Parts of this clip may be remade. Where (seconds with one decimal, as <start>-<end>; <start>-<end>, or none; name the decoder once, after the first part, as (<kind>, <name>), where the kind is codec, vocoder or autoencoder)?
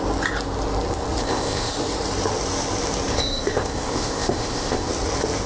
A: 1.2-1.8 (codec, ZipCodec); 3.1-4.9